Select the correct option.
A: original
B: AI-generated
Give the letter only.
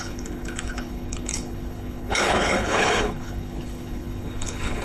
B